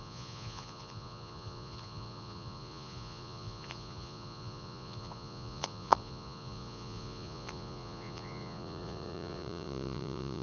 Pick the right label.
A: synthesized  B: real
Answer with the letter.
A